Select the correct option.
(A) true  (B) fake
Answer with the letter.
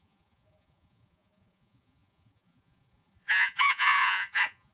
B